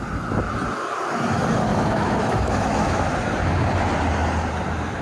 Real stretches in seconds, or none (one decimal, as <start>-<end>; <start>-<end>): 0.0-1.7; 3.1-5.0